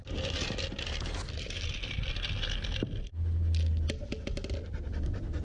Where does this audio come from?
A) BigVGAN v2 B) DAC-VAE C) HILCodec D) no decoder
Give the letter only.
D